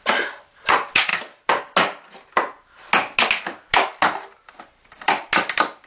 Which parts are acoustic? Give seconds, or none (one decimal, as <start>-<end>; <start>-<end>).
0.0-5.9